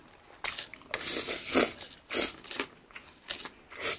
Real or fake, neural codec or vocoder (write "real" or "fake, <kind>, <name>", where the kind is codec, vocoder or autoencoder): real